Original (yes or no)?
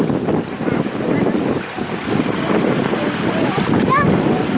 yes